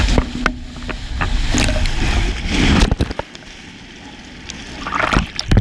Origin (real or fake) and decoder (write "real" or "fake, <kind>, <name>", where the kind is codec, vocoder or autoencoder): real